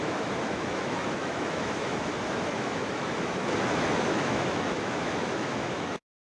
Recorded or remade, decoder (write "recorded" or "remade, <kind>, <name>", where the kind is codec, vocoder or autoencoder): remade, autoencoder, DAC-VAE